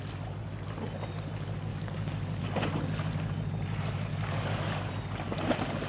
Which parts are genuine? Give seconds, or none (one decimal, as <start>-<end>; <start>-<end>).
0.0-1.7; 2.4-4.1; 4.9-5.9